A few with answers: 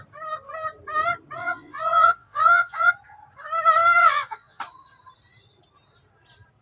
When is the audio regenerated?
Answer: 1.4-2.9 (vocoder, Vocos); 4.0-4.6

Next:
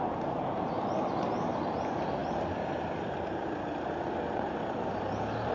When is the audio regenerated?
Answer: 2.2-2.8 (vocoder, BigVGAN v2)

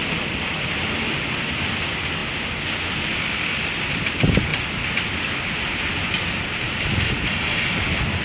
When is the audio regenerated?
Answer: none

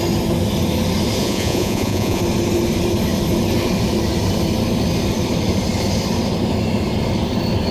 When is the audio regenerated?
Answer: 1.2-2.2 (vocoder, Vocos)

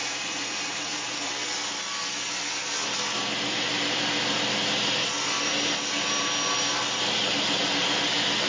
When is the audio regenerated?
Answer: 0.0-1.3 (vocoder, Vocos)

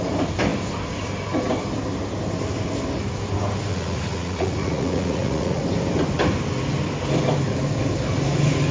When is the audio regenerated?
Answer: 3.7-5.6 (vocoder, Vocos)

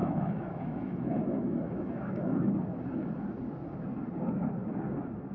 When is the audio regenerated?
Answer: 0.0-2.3 (autoencoder, DAC-VAE)